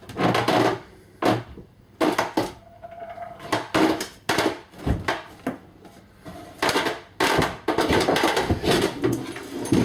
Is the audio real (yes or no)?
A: yes